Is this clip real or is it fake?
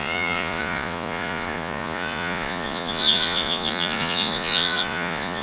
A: fake